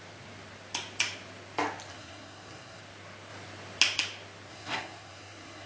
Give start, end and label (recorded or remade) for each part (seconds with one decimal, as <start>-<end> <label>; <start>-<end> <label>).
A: 0.0-1.9 recorded; 1.9-2.8 remade; 2.8-4.5 recorded; 4.5-5.7 remade